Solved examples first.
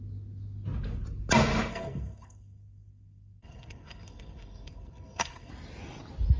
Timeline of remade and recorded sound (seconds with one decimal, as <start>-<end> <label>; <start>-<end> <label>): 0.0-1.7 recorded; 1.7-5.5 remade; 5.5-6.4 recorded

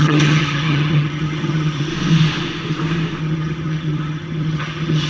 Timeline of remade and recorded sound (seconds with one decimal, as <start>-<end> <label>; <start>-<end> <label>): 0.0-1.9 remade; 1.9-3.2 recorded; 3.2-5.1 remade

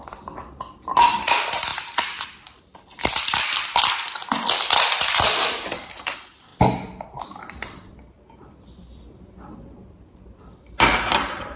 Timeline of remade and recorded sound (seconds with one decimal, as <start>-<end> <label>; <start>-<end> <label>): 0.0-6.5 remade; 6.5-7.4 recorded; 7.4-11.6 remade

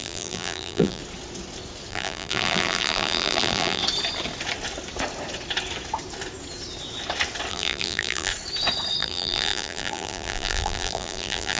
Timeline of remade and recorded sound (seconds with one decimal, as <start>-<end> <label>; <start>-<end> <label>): 0.0-1.0 remade; 1.0-1.9 recorded; 1.9-3.8 remade; 3.8-7.5 recorded; 7.5-8.3 remade; 8.3-9.0 recorded; 9.0-11.6 remade

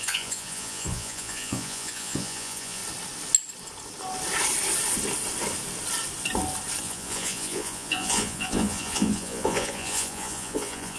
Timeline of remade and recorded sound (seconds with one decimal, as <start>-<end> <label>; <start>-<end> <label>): 0.0-2.8 remade; 2.8-6.8 recorded; 6.8-11.0 remade

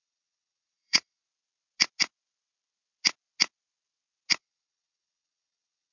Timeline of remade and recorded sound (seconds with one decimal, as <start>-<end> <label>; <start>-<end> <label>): 0.0-1.2 remade; 1.2-4.4 recorded; 4.4-5.9 remade

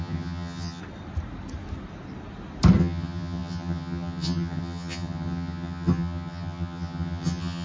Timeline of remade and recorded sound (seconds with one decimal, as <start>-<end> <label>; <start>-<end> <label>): 0.0-0.8 remade; 0.8-2.8 recorded; 2.8-7.6 remade

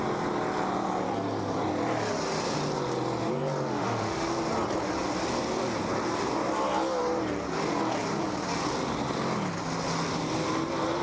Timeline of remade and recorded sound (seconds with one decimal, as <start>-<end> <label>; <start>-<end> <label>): 0.0-3.7 recorded; 3.7-4.3 remade; 4.3-11.0 recorded